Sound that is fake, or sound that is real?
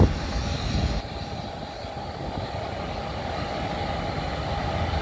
real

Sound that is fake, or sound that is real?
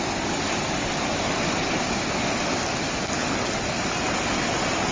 real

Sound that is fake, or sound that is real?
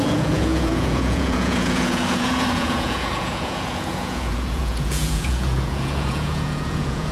fake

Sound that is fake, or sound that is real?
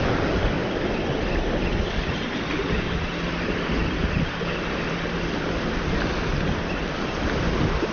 real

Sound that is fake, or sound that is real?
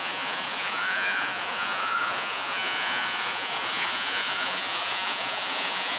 fake